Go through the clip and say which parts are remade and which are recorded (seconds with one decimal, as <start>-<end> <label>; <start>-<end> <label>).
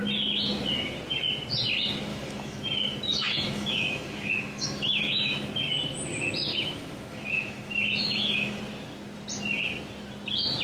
0.0-2.1 recorded; 2.1-5.5 remade; 5.5-6.5 recorded; 6.5-8.6 remade; 8.6-10.6 recorded